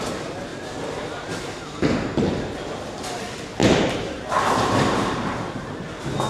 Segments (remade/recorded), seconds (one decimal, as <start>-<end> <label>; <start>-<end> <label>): 0.0-0.5 recorded; 0.5-1.6 remade; 1.6-3.6 recorded; 3.6-5.7 remade; 5.7-6.3 recorded